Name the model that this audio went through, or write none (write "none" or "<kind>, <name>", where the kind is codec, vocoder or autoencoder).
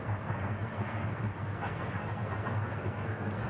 codec, SNAC